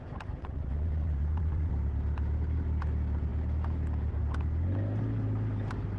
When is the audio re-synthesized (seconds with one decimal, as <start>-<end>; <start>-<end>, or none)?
0.4-1.7